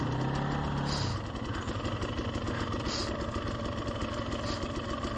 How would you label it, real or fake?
real